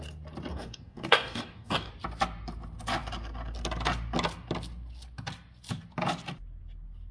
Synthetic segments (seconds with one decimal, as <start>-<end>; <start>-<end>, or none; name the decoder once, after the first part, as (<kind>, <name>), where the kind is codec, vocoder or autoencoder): 0.5-1.9 (codec, DAC)